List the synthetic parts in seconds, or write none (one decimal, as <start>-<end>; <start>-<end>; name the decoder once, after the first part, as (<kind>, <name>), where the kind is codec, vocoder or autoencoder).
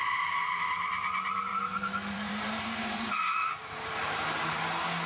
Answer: 1.5-4.6 (vocoder, BigVGAN v2)